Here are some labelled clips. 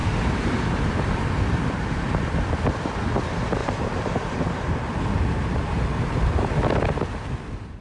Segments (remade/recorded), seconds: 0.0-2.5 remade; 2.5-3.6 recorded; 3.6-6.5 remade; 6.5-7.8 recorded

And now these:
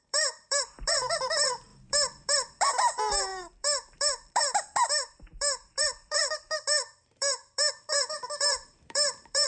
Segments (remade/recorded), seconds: 0.0-9.5 remade

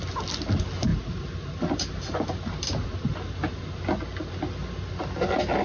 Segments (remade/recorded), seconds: 0.0-5.6 recorded

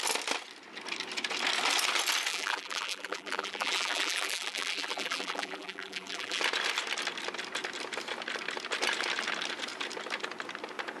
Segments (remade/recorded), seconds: 0.0-2.3 recorded; 2.3-6.4 remade; 6.4-11.0 recorded

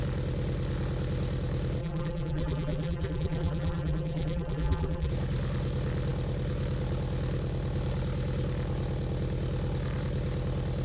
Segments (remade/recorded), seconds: 0.0-1.8 recorded; 1.8-5.1 remade; 5.1-10.8 recorded

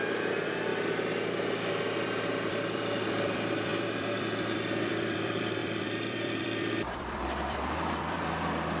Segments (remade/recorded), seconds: 0.0-0.7 remade; 0.7-2.5 recorded; 2.5-8.8 remade